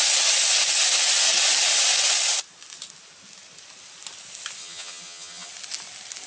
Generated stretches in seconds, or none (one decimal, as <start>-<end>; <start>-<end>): 4.6-5.5